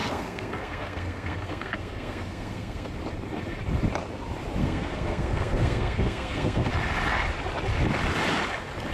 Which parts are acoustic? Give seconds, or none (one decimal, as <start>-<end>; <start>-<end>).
2.9-4.6; 6.7-8.9